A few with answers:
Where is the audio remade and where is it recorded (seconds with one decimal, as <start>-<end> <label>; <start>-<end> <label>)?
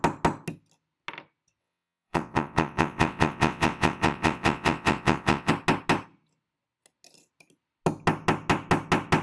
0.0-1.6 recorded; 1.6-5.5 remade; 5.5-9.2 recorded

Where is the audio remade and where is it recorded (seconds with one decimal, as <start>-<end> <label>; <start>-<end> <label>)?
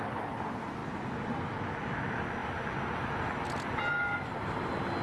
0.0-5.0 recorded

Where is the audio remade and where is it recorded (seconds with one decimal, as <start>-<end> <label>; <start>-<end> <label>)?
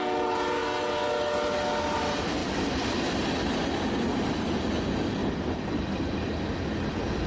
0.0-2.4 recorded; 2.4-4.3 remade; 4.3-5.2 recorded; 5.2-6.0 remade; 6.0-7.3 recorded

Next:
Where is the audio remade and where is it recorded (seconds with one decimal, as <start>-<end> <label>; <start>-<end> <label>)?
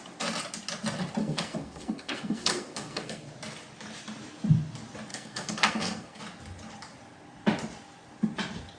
0.0-1.2 recorded; 1.2-3.3 remade; 3.3-5.1 recorded; 5.1-6.2 remade; 6.2-8.8 recorded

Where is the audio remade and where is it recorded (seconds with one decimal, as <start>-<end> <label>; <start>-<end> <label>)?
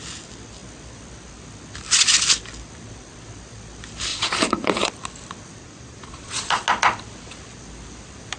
0.0-4.1 recorded; 4.1-4.9 remade; 4.9-5.6 recorded; 5.6-6.4 remade; 6.4-8.4 recorded